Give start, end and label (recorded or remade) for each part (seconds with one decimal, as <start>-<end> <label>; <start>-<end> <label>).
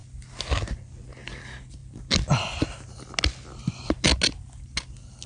0.0-5.3 recorded